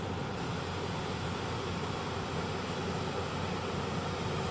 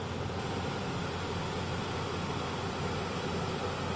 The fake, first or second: first